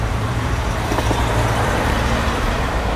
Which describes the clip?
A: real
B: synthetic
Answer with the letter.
B